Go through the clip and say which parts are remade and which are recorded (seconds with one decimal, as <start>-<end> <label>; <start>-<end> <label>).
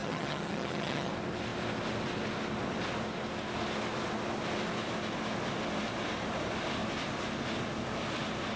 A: 0.0-1.1 remade; 1.1-8.6 recorded